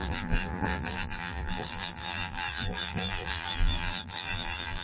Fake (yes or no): yes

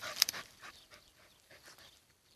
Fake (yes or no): yes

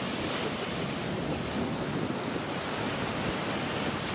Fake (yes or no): no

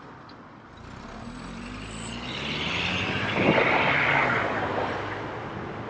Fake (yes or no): no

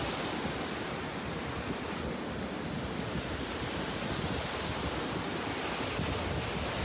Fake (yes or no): no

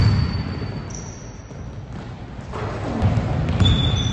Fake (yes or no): no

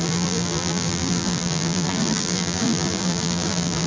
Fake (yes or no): yes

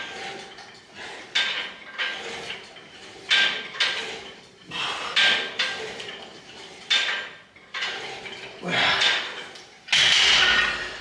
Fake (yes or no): no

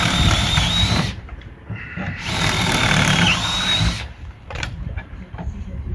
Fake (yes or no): yes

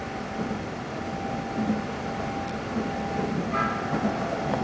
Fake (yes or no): no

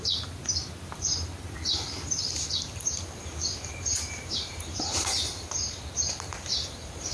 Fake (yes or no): yes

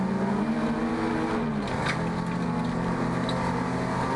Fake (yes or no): no